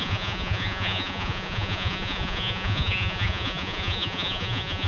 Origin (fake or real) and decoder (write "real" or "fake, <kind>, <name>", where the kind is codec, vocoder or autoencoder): fake, vocoder, Vocos